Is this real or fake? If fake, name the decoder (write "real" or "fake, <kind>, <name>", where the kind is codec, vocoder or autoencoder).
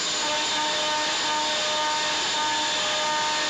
real